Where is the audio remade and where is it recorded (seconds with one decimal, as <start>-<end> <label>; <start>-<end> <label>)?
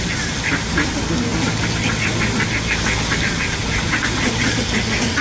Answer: 0.0-5.2 recorded